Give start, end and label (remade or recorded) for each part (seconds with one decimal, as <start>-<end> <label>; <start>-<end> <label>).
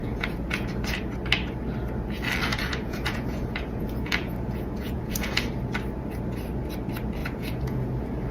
0.0-1.2 remade; 1.2-2.5 recorded; 2.5-5.4 remade; 5.4-7.2 recorded; 7.2-7.9 remade; 7.9-8.3 recorded